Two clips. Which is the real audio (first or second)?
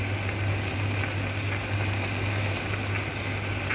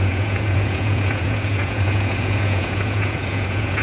first